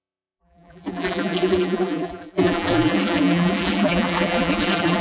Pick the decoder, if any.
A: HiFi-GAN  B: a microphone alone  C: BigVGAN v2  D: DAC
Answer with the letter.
C